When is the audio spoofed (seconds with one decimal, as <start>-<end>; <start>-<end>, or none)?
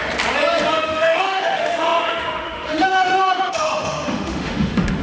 0.7-5.0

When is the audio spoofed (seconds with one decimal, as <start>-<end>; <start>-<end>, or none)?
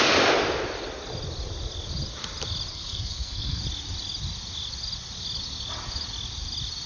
2.7-3.6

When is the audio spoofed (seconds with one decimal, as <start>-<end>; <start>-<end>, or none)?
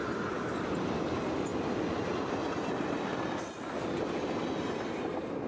none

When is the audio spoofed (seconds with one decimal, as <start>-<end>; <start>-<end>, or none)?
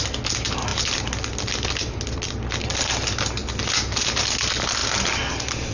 none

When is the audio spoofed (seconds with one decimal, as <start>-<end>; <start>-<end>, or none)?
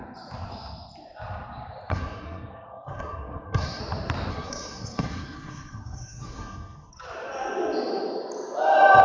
1.9-3.8; 4.3-6.9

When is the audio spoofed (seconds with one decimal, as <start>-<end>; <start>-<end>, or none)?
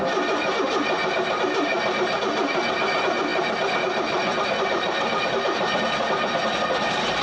none